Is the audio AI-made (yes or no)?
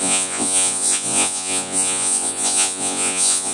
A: yes